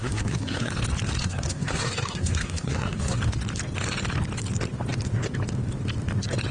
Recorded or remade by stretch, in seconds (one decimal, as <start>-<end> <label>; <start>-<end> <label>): 0.0-0.7 remade; 0.7-1.2 recorded; 1.2-3.2 remade; 3.2-6.5 recorded